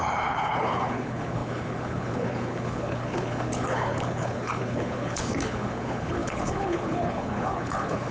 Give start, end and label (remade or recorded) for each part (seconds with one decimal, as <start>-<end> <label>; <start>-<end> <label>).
0.0-8.1 remade